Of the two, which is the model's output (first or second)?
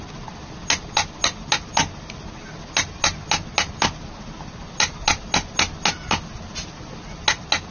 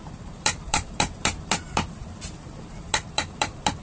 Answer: second